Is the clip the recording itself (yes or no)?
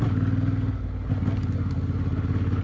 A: yes